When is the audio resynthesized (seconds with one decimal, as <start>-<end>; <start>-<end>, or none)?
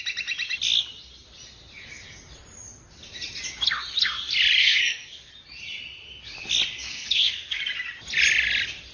4.6-5.3; 6.9-7.6